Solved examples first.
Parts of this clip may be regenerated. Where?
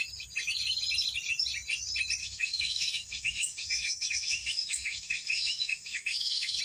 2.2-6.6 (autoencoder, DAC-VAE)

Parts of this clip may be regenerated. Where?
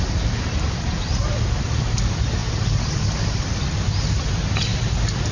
none